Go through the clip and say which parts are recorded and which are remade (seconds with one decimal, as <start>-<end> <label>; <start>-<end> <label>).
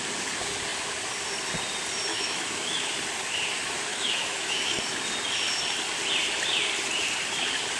0.0-2.1 recorded; 2.1-2.9 remade; 2.9-3.9 recorded; 3.9-4.8 remade; 4.8-7.8 recorded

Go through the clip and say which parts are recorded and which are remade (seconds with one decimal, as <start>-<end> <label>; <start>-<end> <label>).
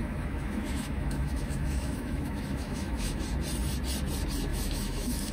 0.0-3.2 remade; 3.2-4.5 recorded; 4.5-5.3 remade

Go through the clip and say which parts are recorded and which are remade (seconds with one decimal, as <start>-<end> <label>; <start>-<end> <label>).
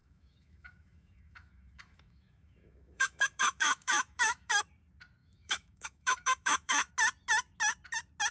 0.0-4.6 remade; 4.6-5.2 recorded; 5.2-6.9 remade; 6.9-8.3 recorded